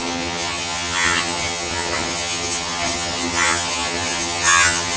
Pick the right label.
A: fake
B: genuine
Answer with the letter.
A